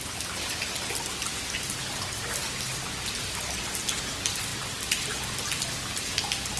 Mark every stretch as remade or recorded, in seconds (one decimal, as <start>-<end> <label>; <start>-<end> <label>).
0.0-6.6 recorded